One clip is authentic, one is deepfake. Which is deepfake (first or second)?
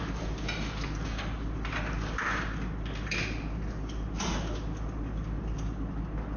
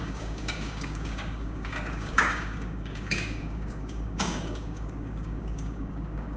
second